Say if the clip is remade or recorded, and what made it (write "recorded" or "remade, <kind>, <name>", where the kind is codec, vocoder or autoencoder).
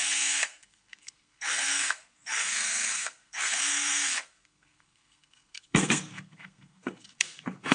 remade, codec, SNAC